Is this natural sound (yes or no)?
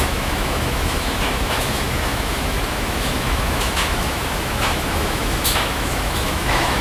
no